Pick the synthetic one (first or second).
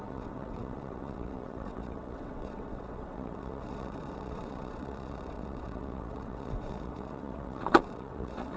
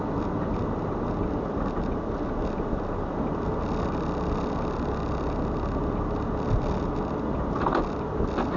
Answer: first